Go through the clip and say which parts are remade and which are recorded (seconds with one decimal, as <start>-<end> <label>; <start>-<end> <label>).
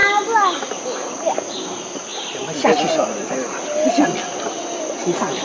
0.0-5.4 recorded